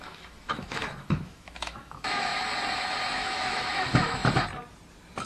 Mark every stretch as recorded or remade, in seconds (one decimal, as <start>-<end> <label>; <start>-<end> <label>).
0.0-2.3 remade; 2.3-3.1 recorded; 3.1-4.2 remade; 4.2-5.3 recorded